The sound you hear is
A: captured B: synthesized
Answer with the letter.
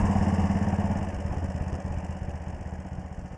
A